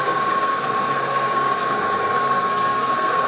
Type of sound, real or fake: fake